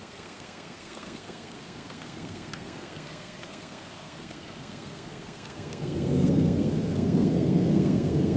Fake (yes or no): yes